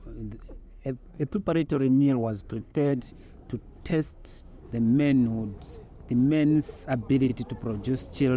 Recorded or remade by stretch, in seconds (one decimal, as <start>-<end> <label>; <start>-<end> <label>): 0.0-0.6 recorded; 0.6-3.0 remade; 3.0-3.9 recorded; 3.9-4.6 remade; 4.6-8.4 recorded